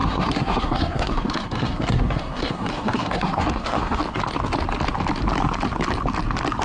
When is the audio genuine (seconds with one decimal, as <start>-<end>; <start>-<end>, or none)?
4.0-6.6